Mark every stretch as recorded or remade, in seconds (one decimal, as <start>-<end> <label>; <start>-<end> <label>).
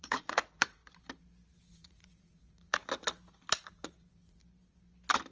0.0-0.8 remade; 0.8-1.7 recorded; 1.7-2.8 remade; 2.8-3.6 recorded; 3.6-4.4 remade; 4.4-5.3 recorded